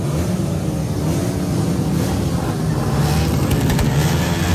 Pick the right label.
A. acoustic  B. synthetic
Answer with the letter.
A